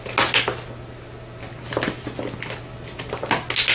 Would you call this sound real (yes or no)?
yes